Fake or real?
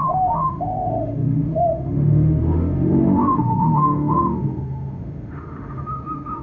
fake